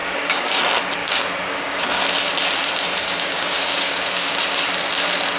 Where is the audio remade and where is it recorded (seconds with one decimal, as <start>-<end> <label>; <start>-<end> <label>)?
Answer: 0.0-0.6 remade; 0.6-1.0 recorded; 1.0-2.0 remade; 2.0-3.0 recorded; 3.0-4.3 remade; 4.3-5.4 recorded